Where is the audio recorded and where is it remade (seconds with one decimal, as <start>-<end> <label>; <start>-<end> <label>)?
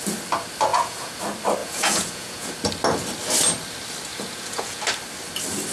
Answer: 0.0-0.7 recorded; 0.7-1.2 remade; 1.2-1.6 recorded; 1.6-2.5 remade; 2.5-4.1 recorded; 4.1-4.8 remade; 4.8-5.7 recorded